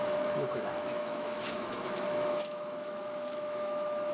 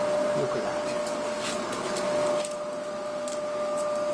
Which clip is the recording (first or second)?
second